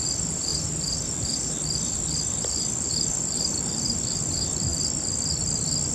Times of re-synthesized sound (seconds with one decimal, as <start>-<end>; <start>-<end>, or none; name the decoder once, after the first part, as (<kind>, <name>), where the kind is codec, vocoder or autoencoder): 0.0-4.7 (vocoder, BigVGAN v2)